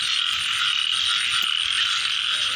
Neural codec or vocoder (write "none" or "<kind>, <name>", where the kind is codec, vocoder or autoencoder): none